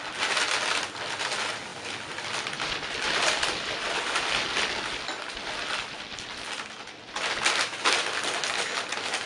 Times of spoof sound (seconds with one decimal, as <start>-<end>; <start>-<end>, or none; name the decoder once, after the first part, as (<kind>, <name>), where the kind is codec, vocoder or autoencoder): none